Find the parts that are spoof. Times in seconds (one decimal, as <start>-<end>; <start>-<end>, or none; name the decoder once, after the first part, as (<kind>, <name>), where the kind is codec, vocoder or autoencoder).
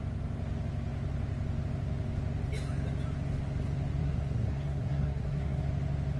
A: 4.0-5.6 (codec, SNAC)